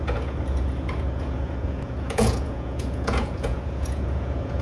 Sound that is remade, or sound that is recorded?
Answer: remade